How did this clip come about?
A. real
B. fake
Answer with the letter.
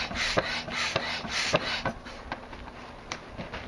A